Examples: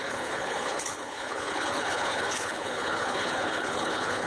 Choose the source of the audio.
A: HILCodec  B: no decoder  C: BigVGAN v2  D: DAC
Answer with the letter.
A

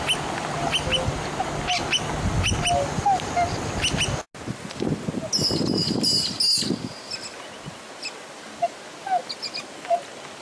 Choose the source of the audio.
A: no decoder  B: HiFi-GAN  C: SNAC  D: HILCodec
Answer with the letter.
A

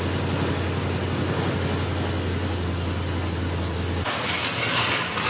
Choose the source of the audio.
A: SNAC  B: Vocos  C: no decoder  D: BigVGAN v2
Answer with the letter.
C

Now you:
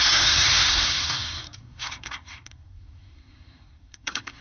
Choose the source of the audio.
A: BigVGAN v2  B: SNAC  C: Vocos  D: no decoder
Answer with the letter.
B